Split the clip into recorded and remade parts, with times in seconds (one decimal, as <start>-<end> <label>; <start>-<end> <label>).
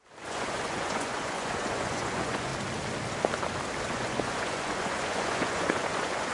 0.0-2.5 remade; 2.5-3.8 recorded; 3.8-6.3 remade